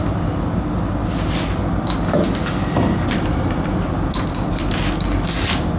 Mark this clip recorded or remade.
recorded